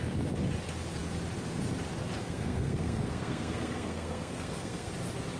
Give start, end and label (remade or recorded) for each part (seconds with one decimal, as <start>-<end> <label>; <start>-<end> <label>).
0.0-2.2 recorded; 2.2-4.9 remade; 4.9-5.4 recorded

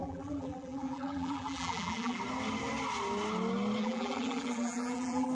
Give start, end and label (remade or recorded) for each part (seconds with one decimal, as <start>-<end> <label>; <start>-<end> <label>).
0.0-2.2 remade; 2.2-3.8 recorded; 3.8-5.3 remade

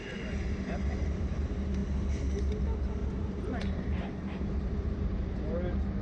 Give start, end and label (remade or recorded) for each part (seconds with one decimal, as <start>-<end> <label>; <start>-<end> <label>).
0.0-1.4 remade; 1.4-3.0 recorded; 3.0-5.4 remade; 5.4-6.0 recorded